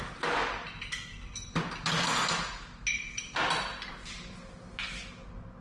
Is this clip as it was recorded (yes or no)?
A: yes